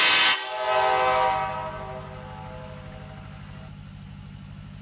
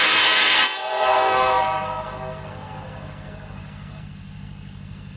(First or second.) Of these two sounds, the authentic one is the first